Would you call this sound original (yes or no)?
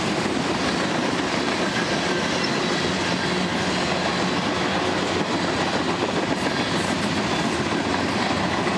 yes